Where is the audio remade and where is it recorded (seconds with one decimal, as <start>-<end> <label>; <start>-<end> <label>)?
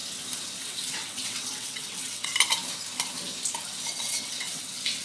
0.0-0.6 recorded; 0.6-2.3 remade; 2.3-4.0 recorded; 4.0-5.0 remade